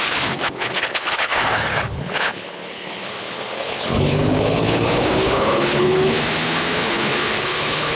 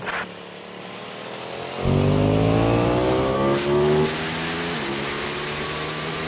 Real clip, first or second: second